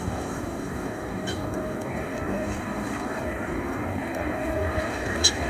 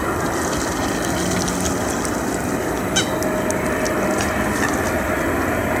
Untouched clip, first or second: second